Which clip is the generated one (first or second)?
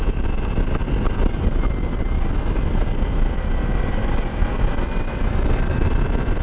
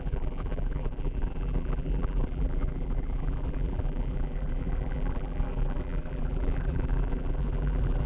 second